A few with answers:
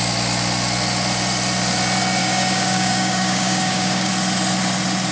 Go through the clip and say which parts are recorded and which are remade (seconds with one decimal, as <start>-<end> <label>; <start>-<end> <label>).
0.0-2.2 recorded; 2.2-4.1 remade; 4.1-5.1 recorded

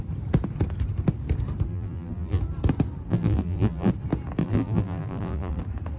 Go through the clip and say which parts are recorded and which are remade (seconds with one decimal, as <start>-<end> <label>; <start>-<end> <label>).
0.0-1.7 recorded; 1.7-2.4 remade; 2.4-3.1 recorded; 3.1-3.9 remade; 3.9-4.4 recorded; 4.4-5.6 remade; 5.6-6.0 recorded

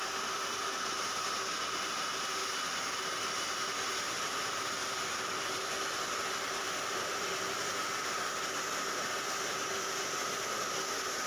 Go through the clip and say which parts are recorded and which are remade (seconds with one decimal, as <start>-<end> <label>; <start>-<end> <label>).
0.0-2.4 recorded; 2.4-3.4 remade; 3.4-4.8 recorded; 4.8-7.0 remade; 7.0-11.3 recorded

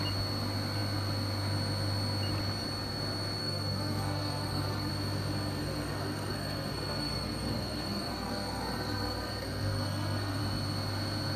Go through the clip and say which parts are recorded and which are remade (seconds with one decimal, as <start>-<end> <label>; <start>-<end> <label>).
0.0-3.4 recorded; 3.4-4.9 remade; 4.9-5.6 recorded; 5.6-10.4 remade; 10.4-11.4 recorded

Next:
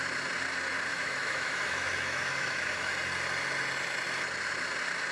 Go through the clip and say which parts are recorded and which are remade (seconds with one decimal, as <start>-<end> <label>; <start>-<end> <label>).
0.0-0.9 recorded; 0.9-2.9 remade; 2.9-5.1 recorded

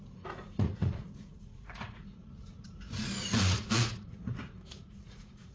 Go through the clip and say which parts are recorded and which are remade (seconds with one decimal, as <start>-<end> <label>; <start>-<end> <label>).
0.0-2.2 remade; 2.2-3.2 recorded; 3.2-5.5 remade